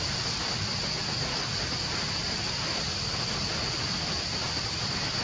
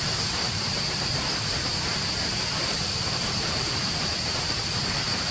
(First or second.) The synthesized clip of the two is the second